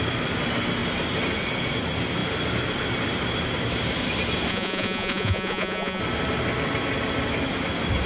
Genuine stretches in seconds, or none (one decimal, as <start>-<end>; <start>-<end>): 0.0-4.5; 6.0-8.1